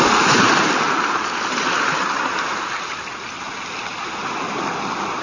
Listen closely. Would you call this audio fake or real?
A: real